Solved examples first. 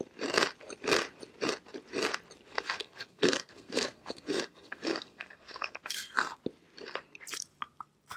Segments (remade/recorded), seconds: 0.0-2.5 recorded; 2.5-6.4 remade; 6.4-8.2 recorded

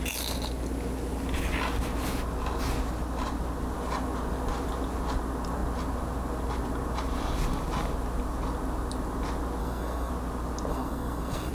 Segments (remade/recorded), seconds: 0.0-9.6 recorded; 9.6-10.1 remade; 10.1-10.7 recorded; 10.7-11.5 remade